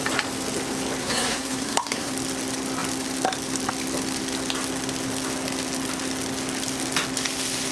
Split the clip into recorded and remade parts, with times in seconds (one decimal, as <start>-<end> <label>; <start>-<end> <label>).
0.0-1.0 recorded; 1.0-2.1 remade; 2.1-7.7 recorded